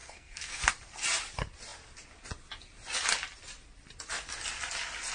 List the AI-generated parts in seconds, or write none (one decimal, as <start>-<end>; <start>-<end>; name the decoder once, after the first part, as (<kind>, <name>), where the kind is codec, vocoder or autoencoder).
0.0-0.7 (codec, SNAC)

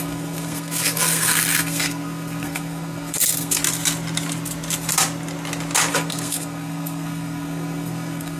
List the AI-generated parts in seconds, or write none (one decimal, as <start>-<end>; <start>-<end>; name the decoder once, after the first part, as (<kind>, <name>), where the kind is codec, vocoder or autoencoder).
0.0-3.6 (codec, SNAC); 5.9-8.4

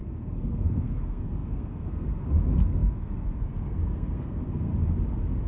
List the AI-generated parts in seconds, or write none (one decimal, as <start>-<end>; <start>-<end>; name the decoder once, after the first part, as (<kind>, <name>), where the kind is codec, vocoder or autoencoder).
0.0-4.7 (codec, SNAC)

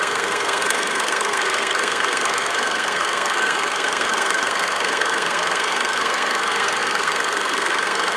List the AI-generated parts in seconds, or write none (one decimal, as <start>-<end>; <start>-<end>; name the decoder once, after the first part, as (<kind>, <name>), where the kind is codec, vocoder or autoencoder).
0.0-8.2 (codec, SNAC)

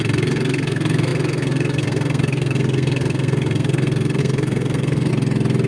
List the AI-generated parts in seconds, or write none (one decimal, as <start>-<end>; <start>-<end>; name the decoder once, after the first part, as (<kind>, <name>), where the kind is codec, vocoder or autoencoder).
0.0-5.1 (codec, SNAC)

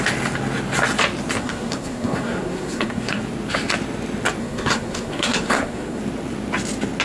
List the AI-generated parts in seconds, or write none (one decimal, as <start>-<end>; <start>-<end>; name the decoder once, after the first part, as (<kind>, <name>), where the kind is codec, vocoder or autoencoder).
1.4-3.2 (codec, SNAC); 4.4-6.0

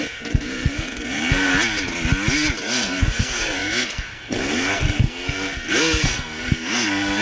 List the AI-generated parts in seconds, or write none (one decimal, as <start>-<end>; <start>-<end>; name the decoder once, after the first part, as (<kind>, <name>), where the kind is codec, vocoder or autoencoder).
0.0-1.5 (codec, SNAC); 2.6-7.2